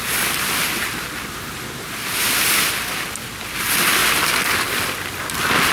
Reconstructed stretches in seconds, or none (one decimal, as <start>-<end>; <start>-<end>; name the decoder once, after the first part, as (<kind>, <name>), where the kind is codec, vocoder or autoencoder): none